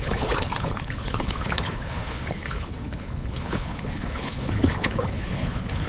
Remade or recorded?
remade